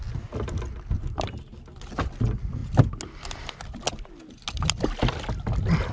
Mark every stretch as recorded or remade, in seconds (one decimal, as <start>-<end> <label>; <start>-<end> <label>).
0.0-5.9 recorded